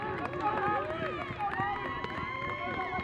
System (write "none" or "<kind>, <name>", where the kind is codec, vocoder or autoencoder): none